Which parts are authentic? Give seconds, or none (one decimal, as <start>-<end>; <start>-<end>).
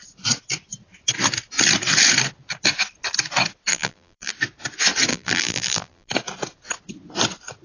0.0-3.7; 4.3-5.1; 6.1-7.6